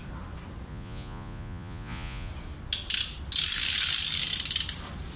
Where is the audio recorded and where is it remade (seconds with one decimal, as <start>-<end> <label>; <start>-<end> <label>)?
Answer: 0.0-0.7 recorded; 0.7-2.3 remade; 2.3-5.2 recorded